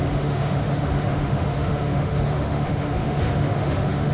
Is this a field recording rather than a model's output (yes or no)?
no